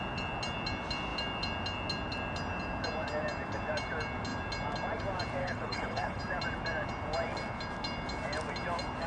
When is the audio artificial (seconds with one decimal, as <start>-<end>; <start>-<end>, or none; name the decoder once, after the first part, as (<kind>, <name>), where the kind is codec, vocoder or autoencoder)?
5.4-6.2 (codec, HILCodec)